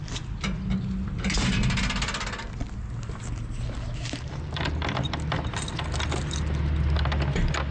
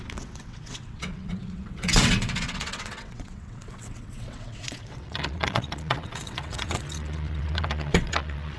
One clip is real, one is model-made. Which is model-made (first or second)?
second